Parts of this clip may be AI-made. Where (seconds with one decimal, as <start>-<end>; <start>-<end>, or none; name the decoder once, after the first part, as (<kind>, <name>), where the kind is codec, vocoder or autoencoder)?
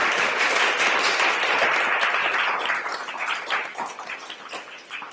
none